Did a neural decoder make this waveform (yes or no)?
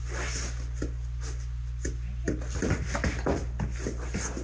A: no